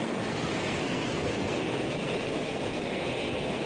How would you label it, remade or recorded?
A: remade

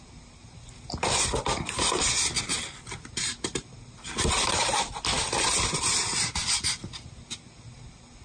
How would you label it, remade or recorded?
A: recorded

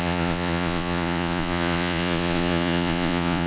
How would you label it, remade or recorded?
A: remade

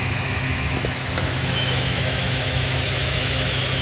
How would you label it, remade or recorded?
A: remade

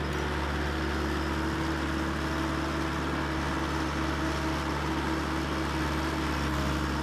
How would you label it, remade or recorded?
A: recorded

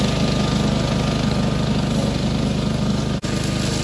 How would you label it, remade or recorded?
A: recorded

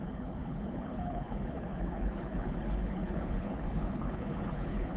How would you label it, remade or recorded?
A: remade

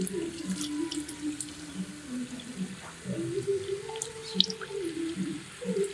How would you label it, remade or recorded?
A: recorded